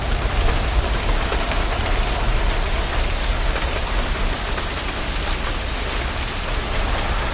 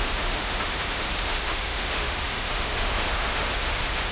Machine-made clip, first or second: second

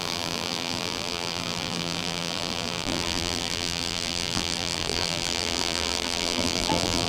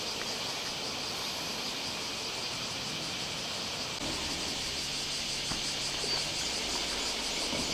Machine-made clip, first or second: first